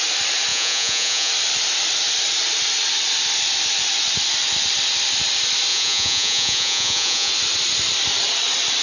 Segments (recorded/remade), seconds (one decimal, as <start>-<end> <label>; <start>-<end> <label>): 0.0-0.5 recorded; 0.5-1.3 remade; 1.3-5.7 recorded; 5.7-7.3 remade; 7.3-8.8 recorded